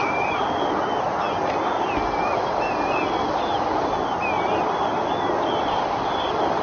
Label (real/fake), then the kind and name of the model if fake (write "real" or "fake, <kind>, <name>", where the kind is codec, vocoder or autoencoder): real